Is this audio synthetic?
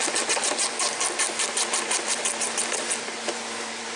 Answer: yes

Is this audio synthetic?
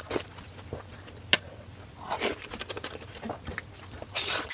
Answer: no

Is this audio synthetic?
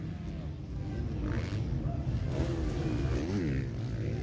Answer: no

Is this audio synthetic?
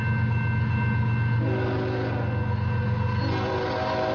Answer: no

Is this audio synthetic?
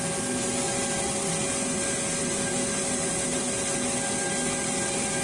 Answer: no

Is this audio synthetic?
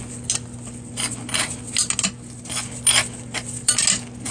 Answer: no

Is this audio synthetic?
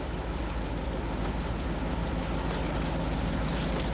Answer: no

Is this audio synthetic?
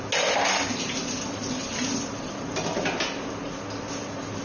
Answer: no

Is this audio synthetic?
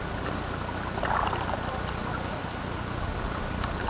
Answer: no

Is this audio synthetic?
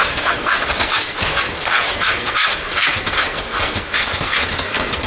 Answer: yes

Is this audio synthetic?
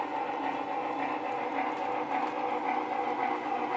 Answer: no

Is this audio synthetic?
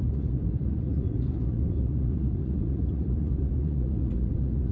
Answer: yes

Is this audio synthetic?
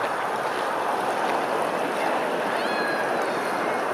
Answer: no